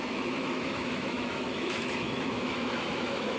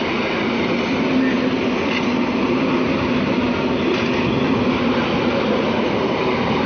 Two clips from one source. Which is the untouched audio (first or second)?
second